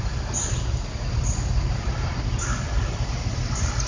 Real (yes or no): yes